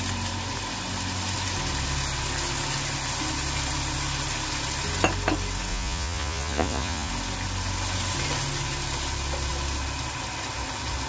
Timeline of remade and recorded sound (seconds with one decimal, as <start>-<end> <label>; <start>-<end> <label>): 0.0-5.7 recorded; 5.7-7.1 remade; 7.1-11.1 recorded